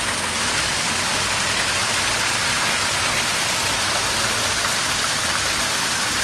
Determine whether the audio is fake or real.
real